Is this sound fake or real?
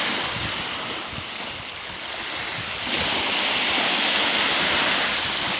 real